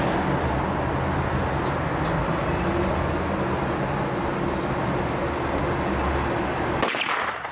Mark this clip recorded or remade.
recorded